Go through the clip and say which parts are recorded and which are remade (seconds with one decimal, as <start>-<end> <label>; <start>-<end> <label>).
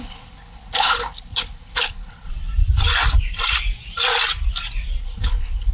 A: 0.0-2.3 remade; 2.3-5.0 recorded; 5.0-5.7 remade